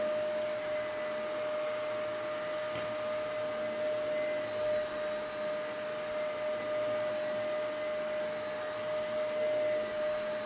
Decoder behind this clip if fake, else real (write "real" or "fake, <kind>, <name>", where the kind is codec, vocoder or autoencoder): real